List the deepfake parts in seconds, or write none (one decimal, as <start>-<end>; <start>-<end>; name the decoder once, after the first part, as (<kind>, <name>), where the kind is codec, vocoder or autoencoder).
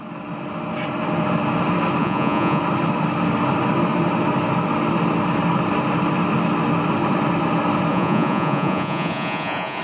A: 2.0-2.6 (vocoder, Vocos); 7.9-9.8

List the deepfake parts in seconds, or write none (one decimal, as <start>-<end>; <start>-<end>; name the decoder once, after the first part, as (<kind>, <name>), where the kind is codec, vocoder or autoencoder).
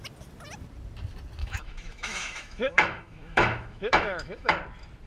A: 1.4-4.5 (autoencoder, DAC-VAE)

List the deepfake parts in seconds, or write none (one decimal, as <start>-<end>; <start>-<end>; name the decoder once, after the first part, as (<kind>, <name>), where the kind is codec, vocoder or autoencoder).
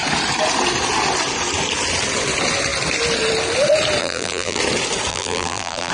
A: 4.0-4.6 (vocoder, BigVGAN v2); 5.1-5.9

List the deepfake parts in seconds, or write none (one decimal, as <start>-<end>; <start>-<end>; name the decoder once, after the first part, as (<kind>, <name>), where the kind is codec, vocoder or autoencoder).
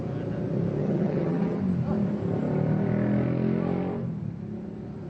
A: 0.8-1.6 (vocoder, HiFi-GAN)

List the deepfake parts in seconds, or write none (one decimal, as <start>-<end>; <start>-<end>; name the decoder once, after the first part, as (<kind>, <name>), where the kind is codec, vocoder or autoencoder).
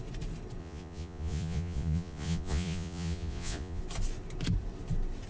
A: 0.6-3.8 (vocoder, Vocos)